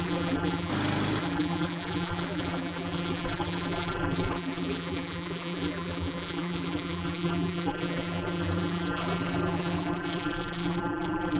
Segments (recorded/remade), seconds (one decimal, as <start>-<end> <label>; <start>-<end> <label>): 0.0-0.7 remade; 0.7-1.2 recorded; 1.2-11.4 remade